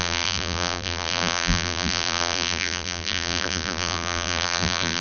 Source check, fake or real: fake